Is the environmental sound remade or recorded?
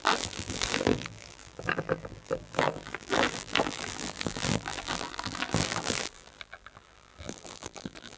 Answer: remade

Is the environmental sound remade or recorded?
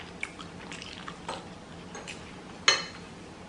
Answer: recorded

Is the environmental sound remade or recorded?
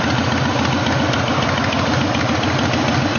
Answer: recorded